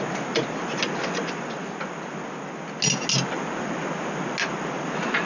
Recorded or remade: recorded